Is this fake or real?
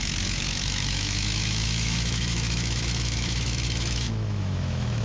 fake